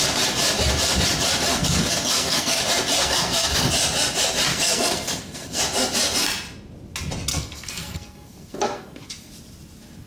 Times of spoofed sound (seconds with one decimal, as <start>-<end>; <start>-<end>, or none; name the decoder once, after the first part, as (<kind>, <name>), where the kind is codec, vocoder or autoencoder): 1.5-2.6 (codec, SNAC); 3.0-3.7; 4.5-5.6; 7.3-9.3